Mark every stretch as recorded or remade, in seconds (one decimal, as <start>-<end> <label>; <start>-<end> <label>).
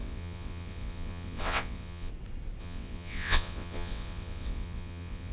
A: 0.0-2.1 remade; 2.1-2.6 recorded; 2.6-5.3 remade